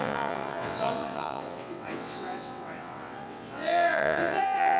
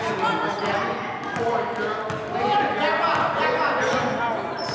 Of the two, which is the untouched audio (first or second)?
second